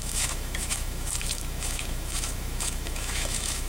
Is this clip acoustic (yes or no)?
no